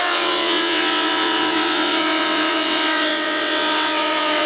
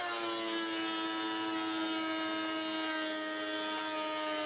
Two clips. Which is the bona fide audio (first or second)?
second